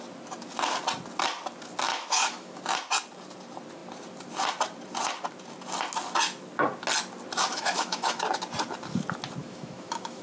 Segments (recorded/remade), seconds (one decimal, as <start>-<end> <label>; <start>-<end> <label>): 0.0-1.9 recorded; 1.9-2.6 remade; 2.6-7.5 recorded; 7.5-8.2 remade; 8.2-9.4 recorded; 9.4-10.2 remade